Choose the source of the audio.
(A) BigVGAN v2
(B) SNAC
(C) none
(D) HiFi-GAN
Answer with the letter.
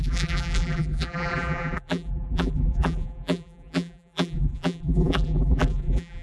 A